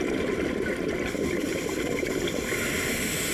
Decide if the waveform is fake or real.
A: real